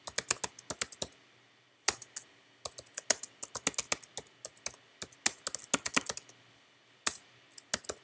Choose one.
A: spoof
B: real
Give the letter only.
B